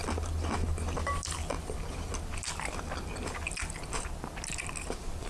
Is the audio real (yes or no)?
yes